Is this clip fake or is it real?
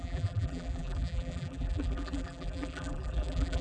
fake